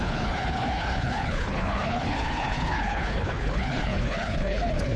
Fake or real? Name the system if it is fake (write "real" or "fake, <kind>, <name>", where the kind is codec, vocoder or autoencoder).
fake, codec, HILCodec